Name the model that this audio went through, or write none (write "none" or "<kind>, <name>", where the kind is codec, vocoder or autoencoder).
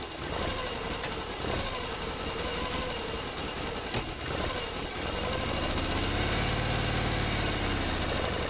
none